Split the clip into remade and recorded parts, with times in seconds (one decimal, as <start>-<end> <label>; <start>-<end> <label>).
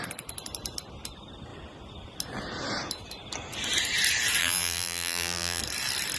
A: 0.0-4.4 recorded; 4.4-5.6 remade; 5.6-6.2 recorded